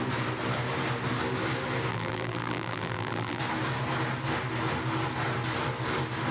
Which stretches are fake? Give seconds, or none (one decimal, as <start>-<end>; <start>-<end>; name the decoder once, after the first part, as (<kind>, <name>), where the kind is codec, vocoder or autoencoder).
1.9-3.4 (vocoder, BigVGAN v2)